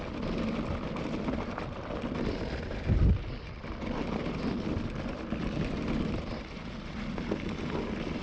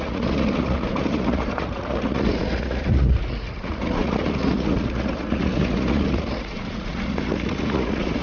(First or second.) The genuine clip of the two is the first